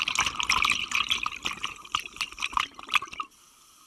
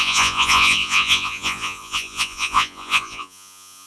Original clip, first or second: first